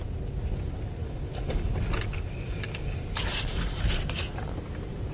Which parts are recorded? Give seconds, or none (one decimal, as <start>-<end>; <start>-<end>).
0.0-1.0; 3.0-5.1